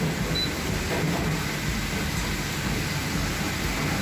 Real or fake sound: real